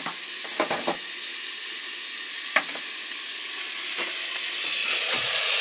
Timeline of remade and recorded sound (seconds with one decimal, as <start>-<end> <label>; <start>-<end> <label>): 0.0-4.8 recorded; 4.8-5.6 remade